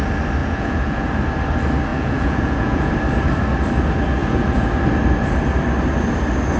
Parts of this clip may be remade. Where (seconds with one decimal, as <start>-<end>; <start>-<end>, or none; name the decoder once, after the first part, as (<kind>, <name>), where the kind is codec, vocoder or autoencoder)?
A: 0.4-1.1 (vocoder, Vocos); 1.9-2.9; 4.2-4.7